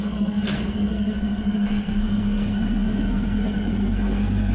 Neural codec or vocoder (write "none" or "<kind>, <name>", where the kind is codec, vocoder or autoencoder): codec, SNAC